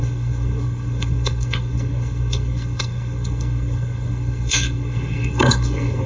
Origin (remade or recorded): remade